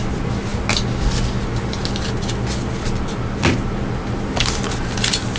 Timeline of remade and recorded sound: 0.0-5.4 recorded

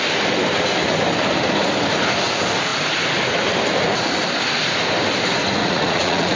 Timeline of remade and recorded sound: 0.0-5.6 recorded; 5.6-6.4 remade

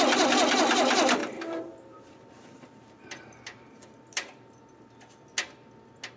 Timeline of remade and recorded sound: 0.0-1.2 recorded; 1.2-4.9 remade; 4.9-6.2 recorded

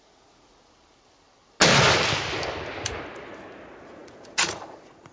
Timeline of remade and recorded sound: 0.0-0.5 remade; 0.5-3.6 recorded; 3.6-5.1 remade